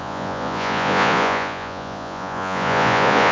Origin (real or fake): fake